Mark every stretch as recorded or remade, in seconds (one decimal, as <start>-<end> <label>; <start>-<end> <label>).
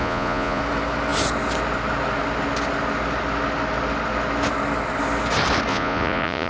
0.0-0.6 remade; 0.6-5.7 recorded; 5.7-6.5 remade